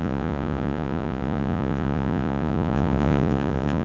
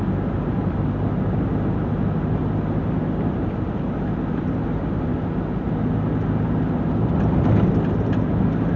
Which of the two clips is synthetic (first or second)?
first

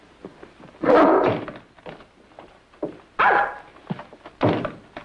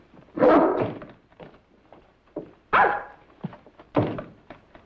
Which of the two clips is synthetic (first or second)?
second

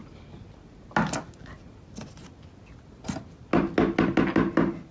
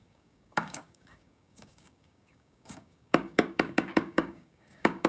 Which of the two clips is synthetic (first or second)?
second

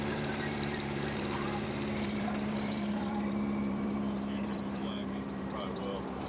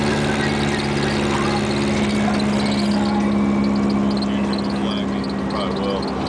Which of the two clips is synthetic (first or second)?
first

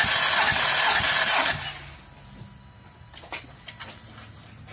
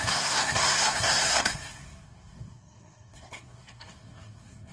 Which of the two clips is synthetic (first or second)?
second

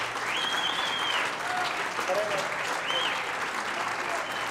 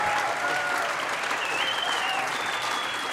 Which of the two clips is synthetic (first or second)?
second